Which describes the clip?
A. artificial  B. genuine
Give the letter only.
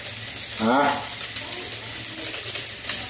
B